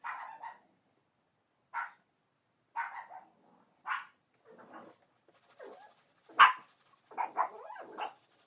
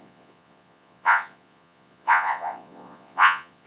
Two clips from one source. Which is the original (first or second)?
first